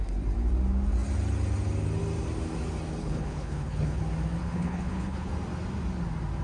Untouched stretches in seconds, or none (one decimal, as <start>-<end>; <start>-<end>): 0.0-3.0; 4.0-4.4; 5.3-6.4